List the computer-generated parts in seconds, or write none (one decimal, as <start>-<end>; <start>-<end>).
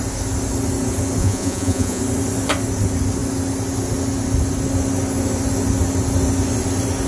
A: 1.2-2.0